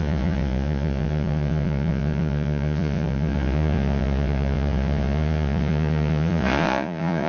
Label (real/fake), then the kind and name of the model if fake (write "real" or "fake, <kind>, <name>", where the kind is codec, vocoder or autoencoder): fake, vocoder, Vocos